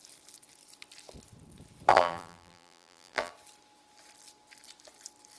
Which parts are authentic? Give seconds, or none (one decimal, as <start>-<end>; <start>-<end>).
0.0-1.9; 3.3-5.4